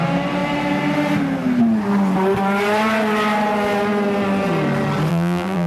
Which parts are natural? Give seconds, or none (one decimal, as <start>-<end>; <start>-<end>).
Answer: 0.0-5.1